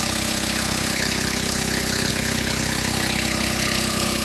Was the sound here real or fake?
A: fake